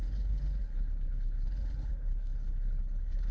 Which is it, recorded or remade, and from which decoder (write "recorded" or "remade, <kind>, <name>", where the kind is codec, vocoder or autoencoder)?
remade, codec, HILCodec